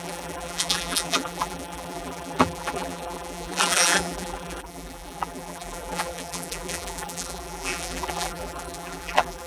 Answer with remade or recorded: remade